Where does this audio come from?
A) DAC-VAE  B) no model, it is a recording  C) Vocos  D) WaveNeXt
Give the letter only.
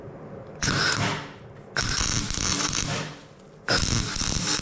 B